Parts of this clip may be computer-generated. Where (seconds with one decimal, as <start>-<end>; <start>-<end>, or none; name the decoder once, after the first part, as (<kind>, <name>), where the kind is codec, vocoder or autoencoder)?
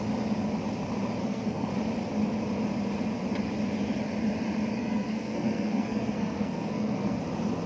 1.2-1.7 (codec, SNAC); 4.7-7.2